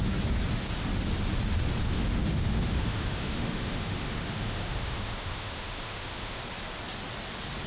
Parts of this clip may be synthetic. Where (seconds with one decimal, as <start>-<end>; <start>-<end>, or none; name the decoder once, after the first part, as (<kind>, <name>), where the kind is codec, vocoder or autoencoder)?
1.8-6.4 (autoencoder, DAC-VAE)